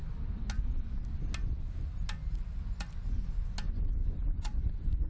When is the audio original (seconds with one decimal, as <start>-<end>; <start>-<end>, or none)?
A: 0.0-4.0